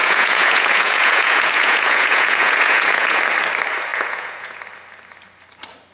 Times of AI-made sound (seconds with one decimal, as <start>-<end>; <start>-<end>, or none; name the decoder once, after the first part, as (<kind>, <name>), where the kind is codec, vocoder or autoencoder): 0.0-3.2 (vocoder, Vocos); 3.9-4.6